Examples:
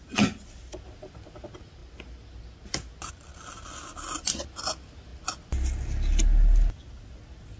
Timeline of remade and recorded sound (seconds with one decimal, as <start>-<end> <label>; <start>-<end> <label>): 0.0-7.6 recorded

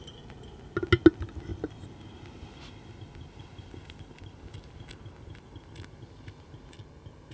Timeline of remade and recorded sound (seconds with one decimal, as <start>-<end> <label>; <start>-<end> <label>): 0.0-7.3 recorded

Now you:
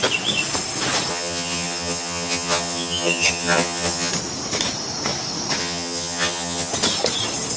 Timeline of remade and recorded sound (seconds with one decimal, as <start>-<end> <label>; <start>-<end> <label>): 0.0-1.1 recorded; 1.1-4.1 remade; 4.1-5.6 recorded; 5.6-6.7 remade; 6.7-7.6 recorded

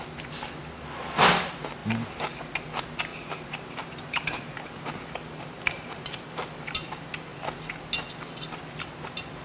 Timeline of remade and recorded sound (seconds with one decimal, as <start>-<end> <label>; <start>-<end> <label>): 0.0-1.8 recorded; 1.8-2.3 remade; 2.3-3.1 recorded; 3.1-6.2 remade; 6.2-9.4 recorded

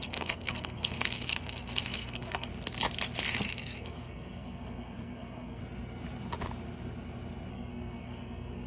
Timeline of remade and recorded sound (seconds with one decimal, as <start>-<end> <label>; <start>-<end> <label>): 0.0-2.5 remade; 2.5-3.3 recorded; 3.3-5.6 remade; 5.6-7.5 recorded; 7.5-8.7 remade

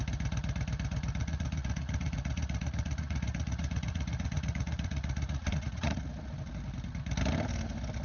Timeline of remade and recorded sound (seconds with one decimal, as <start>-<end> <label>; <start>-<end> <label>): 0.0-1.2 recorded; 1.2-6.0 remade; 6.0-8.0 recorded

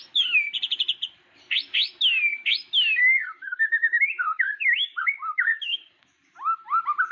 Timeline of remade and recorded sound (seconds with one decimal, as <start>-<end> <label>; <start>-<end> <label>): 0.0-3.0 recorded; 3.0-6.0 remade; 6.0-7.1 recorded